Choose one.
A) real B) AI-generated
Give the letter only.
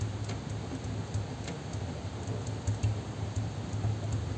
A